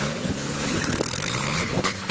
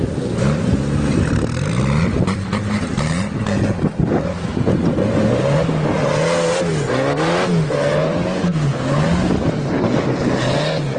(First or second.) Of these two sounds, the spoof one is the first